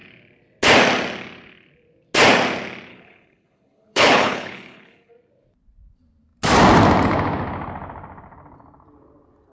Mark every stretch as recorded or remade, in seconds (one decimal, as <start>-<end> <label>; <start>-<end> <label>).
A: 0.0-2.9 recorded; 2.9-5.1 remade; 5.1-9.5 recorded

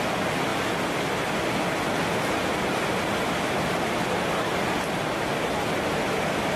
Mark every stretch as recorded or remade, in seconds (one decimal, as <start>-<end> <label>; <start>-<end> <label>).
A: 0.0-6.6 recorded

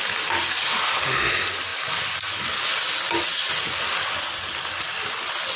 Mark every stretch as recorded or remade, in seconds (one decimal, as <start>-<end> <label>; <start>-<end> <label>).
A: 0.0-5.6 recorded

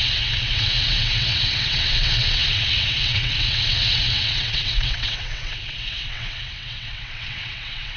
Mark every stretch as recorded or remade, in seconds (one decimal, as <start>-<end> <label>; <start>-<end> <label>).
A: 0.0-8.0 remade

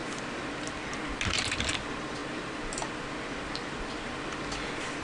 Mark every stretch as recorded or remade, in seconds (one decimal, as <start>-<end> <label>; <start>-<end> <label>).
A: 0.0-5.0 recorded

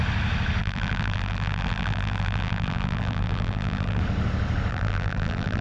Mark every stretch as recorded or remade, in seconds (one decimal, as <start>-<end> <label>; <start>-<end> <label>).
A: 0.0-0.6 recorded; 0.6-4.0 remade; 4.0-4.7 recorded; 4.7-5.6 remade

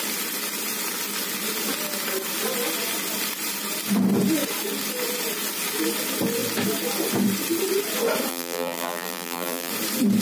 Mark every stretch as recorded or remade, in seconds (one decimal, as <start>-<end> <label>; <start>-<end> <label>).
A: 0.0-8.3 recorded; 8.3-9.7 remade; 9.7-10.2 recorded

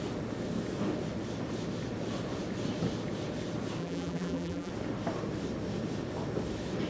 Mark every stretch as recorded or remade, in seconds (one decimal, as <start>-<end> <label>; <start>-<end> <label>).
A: 0.0-3.8 recorded; 3.8-4.7 remade; 4.7-6.9 recorded